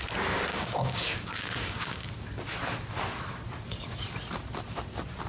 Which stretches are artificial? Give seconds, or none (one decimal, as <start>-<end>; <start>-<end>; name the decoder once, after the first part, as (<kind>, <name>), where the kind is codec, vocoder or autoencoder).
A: 0.5-2.1 (codec, DAC)

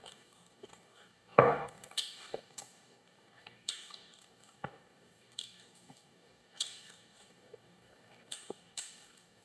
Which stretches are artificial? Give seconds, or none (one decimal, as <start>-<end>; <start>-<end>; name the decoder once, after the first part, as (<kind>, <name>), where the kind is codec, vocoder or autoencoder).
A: 0.0-9.4 (codec, DAC)

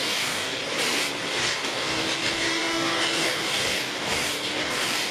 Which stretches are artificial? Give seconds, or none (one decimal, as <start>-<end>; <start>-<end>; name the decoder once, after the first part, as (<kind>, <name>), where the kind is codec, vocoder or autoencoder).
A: 0.0-0.6 (codec, DAC); 1.3-5.1

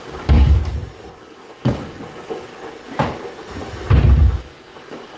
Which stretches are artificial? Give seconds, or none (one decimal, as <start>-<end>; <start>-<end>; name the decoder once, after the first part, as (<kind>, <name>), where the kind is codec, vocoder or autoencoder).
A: 0.0-0.6 (codec, DAC); 1.2-2.5; 4.4-5.2

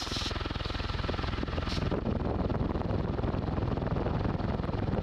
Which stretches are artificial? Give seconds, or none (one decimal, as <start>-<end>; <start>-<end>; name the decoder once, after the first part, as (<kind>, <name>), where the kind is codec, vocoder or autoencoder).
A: none

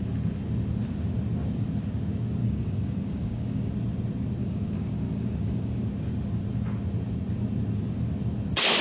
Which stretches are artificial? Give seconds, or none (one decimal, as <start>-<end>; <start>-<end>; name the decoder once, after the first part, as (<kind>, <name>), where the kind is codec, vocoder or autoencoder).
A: 2.4-3.7 (codec, DAC); 4.4-5.8